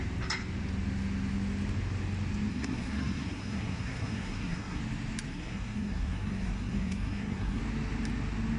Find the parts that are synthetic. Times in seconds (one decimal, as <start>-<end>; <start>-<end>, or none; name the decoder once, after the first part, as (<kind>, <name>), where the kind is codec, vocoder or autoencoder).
2.5-4.8 (codec, SNAC); 5.3-7.6